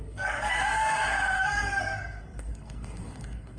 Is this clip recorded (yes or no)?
no